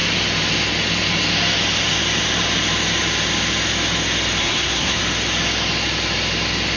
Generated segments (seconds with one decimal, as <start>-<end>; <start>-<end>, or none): 4.4-5.0